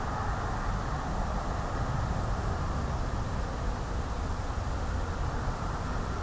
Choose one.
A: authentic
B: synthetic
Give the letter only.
A